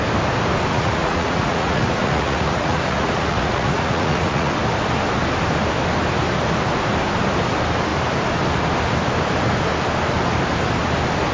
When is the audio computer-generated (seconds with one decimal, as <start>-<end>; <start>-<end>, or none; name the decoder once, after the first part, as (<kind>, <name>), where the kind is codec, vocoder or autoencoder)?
0.7-4.5 (vocoder, Vocos)